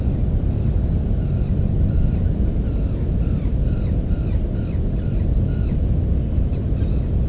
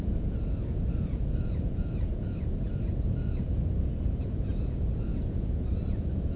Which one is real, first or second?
first